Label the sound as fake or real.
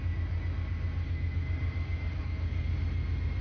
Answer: real